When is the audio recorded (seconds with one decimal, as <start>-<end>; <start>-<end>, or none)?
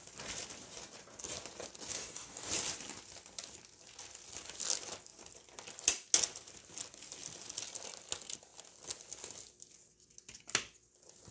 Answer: 0.0-1.9; 2.5-11.3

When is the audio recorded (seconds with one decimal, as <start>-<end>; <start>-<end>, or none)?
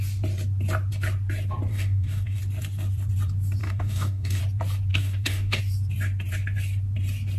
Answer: 0.0-1.7; 2.4-3.6; 4.4-4.9; 5.6-7.4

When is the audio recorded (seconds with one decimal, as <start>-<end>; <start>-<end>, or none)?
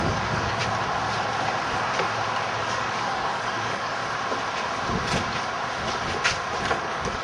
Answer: 0.6-2.6; 4.0-6.7